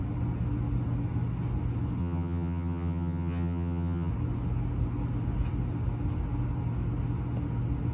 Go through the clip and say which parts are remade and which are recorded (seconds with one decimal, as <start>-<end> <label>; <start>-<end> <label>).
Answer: 0.0-2.0 recorded; 2.0-4.1 remade; 4.1-7.9 recorded